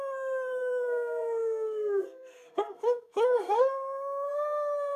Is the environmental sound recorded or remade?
remade